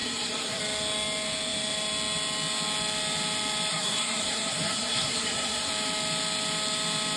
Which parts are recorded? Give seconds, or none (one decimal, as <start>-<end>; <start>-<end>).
0.6-3.7; 5.7-7.2